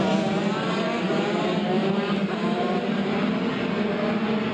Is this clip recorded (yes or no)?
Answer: yes